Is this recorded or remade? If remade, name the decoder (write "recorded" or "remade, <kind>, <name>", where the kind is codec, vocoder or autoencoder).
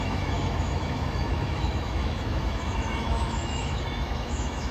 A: remade, autoencoder, DAC-VAE